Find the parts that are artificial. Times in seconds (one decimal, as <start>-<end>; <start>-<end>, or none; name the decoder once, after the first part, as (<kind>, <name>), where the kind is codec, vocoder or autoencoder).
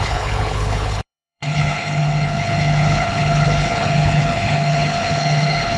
0.0-5.8 (codec, HILCodec)